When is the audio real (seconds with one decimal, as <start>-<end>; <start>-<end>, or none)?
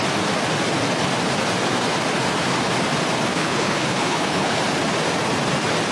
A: 0.0-3.3; 4.6-5.9